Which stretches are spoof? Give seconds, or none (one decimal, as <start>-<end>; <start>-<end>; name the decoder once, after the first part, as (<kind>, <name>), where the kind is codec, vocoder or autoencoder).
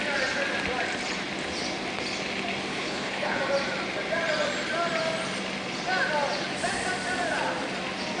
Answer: 2.7-3.4 (codec, HILCodec)